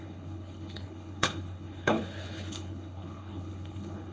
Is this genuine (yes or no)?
no